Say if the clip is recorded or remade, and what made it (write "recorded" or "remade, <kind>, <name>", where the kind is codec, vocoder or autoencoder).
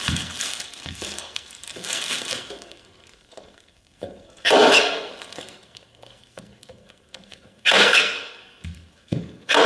remade, codec, SNAC